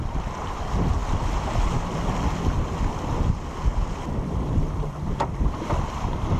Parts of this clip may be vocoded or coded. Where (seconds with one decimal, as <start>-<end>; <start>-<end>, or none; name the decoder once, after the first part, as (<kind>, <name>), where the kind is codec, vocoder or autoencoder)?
0.0-1.0 (vocoder, BigVGAN v2); 4.3-6.4